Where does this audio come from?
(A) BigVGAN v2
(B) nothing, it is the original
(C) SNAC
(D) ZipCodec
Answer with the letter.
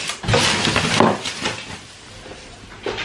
B